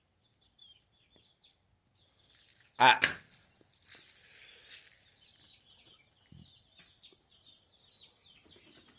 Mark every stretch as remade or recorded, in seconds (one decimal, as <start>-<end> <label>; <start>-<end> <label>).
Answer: 0.0-9.0 recorded